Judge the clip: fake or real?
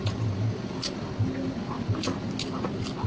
real